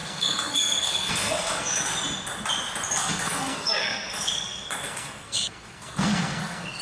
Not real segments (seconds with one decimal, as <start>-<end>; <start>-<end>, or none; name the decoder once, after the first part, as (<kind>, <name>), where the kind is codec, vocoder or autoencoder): 0.0-1.9 (codec, SNAC); 2.9-6.8